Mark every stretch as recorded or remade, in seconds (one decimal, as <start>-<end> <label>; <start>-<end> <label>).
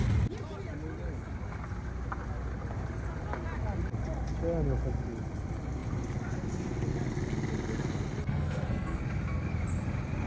0.0-8.2 recorded; 8.2-9.0 remade; 9.0-10.3 recorded